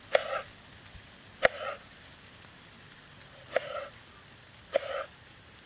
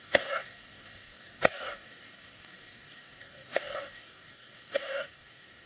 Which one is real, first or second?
first